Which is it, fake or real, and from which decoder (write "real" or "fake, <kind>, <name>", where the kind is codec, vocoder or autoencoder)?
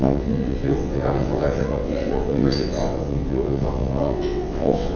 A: fake, vocoder, WaveNeXt